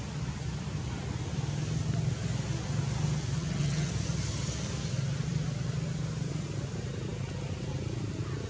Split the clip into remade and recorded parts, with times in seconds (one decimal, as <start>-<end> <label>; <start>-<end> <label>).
0.0-3.4 recorded; 3.4-3.9 remade; 3.9-8.5 recorded